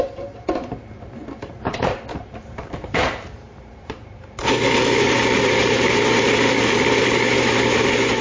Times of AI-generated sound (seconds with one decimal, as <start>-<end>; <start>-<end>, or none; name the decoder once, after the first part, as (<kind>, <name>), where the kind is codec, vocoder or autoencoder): 0.0-8.2 (vocoder, BigVGAN v2)